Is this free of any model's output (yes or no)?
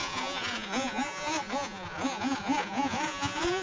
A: no